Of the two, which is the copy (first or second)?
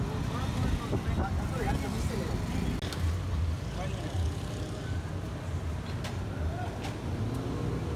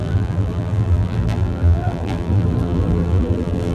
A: second